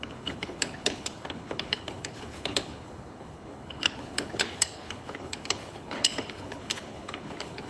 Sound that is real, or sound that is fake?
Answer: fake